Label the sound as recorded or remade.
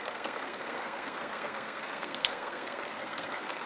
remade